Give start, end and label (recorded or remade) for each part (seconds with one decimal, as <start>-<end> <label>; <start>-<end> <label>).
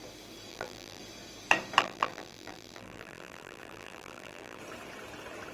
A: 0.0-0.5 recorded; 0.5-1.0 remade; 1.0-1.8 recorded; 1.8-4.6 remade; 4.6-5.5 recorded